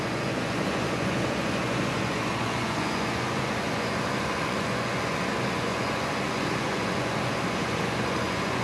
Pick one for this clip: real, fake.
fake